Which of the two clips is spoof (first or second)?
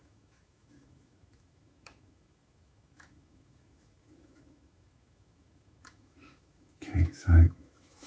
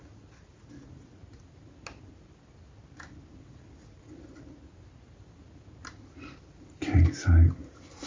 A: first